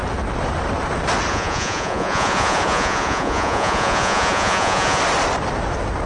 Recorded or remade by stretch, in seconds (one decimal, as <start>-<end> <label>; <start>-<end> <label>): 0.0-1.3 recorded; 1.3-5.0 remade; 5.0-6.1 recorded